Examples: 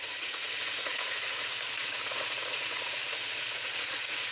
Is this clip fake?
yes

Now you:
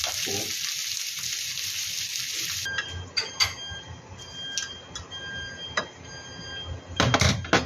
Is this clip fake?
no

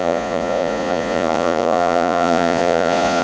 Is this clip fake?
yes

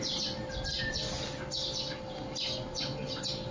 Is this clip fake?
no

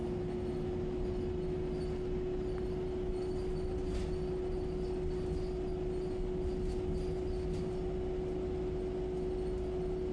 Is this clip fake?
no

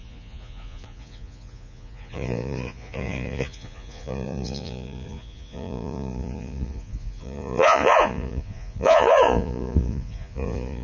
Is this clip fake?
yes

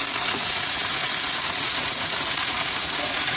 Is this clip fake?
yes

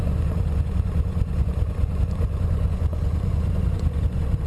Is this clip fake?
yes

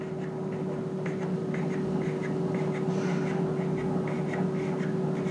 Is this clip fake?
no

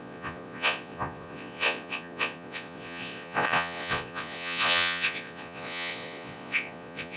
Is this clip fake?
yes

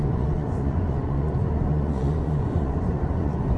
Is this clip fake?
yes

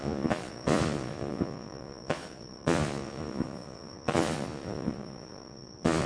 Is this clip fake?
yes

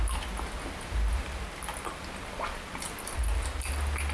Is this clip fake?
no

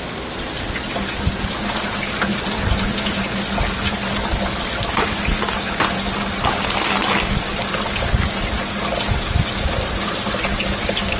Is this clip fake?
no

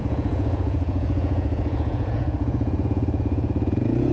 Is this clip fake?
yes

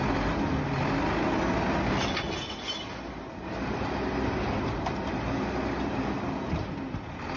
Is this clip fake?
no